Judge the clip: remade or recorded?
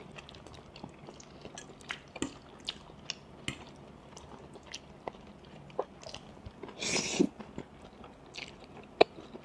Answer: recorded